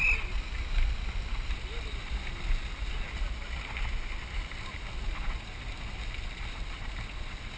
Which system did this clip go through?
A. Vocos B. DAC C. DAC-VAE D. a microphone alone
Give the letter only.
D